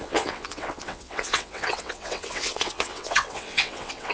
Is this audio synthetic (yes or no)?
yes